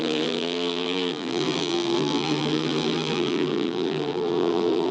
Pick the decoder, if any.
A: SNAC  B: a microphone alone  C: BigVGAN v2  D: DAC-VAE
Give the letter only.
C